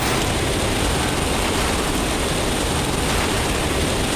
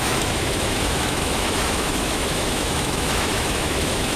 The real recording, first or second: first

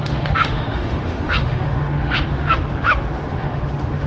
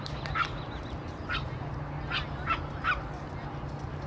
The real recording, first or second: second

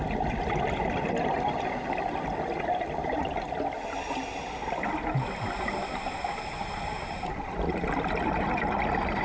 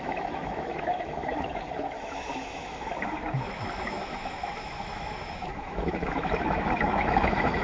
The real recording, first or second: first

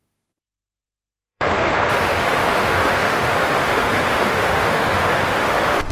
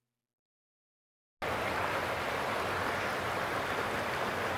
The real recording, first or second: second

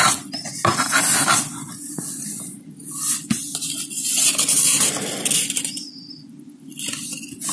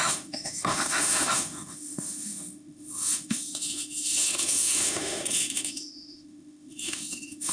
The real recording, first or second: first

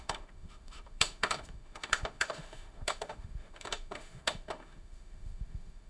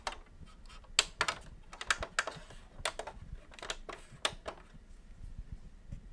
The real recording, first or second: second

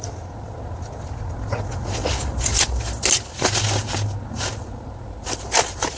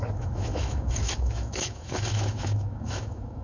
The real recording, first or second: first